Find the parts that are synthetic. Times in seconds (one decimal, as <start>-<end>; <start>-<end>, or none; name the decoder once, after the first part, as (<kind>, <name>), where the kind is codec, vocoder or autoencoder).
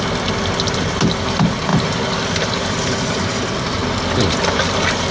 none